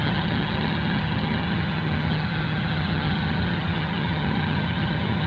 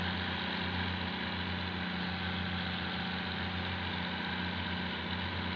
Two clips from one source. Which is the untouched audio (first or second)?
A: second